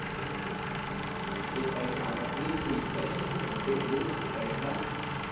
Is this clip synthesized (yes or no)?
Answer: no